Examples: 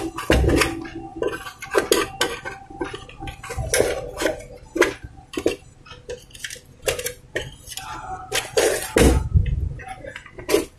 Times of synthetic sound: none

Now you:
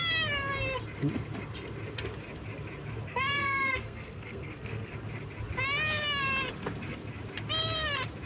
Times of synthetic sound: 3.1-4.9